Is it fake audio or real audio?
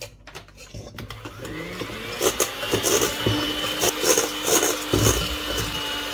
real